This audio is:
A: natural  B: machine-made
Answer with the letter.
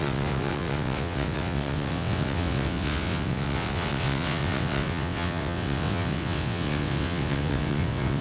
B